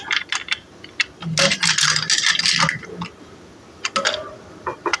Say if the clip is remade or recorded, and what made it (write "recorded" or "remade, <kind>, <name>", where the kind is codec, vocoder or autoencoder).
recorded